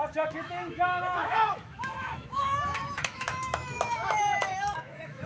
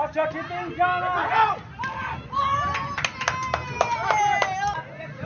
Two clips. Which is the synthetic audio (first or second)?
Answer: first